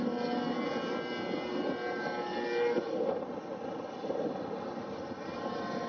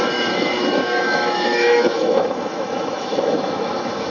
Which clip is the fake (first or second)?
second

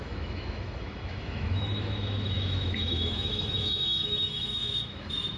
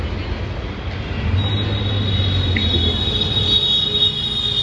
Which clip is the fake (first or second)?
first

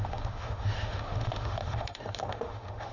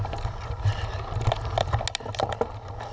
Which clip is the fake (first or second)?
first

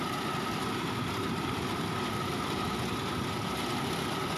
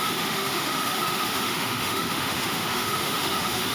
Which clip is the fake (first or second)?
second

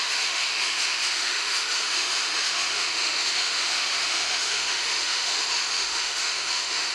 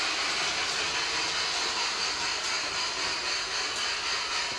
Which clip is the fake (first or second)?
first